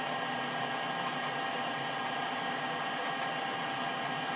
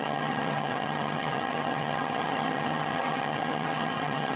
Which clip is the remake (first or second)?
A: second